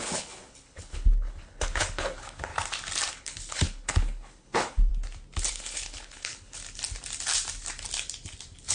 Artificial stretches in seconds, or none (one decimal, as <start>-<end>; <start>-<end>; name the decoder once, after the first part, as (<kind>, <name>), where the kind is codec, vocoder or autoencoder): 0.0-2.5 (codec, HILCodec); 3.1-4.9; 5.5-6.6